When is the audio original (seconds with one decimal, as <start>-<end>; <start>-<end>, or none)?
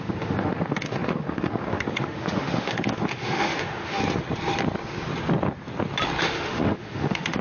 4.0-6.2